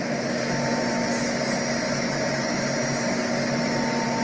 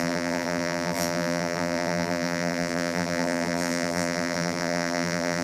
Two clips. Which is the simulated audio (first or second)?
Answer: second